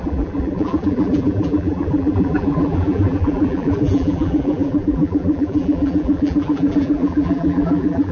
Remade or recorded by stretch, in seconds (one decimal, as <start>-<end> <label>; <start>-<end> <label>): 0.0-8.1 remade